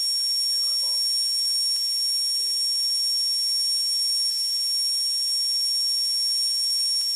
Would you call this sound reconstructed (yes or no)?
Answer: no